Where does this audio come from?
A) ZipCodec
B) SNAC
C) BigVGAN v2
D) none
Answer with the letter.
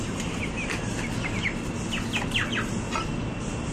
D